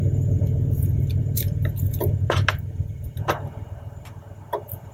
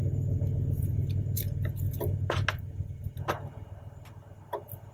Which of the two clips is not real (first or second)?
first